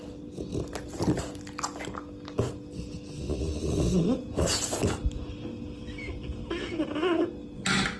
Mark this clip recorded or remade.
recorded